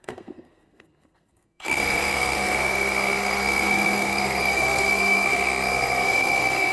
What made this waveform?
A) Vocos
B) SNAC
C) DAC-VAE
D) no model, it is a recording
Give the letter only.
B